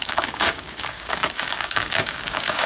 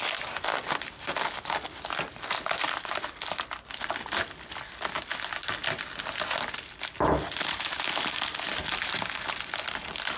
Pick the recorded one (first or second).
second